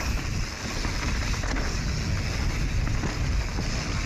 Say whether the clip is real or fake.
real